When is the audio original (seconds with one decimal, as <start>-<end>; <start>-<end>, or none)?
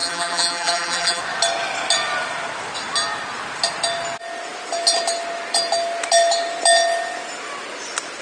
1.2-8.2